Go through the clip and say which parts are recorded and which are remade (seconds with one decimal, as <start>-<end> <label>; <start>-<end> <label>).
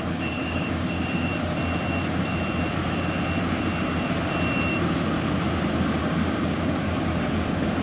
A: 0.0-1.3 remade; 1.3-6.0 recorded; 6.0-7.8 remade